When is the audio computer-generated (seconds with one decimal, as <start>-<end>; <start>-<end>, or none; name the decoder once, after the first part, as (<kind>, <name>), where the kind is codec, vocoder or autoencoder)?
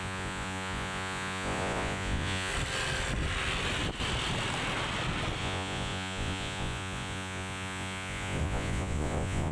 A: 0.0-2.5 (vocoder, Vocos); 5.4-9.5